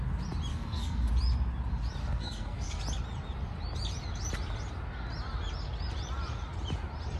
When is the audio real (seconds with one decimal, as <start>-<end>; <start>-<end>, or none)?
0.0-0.5; 1.1-2.0; 2.8-7.2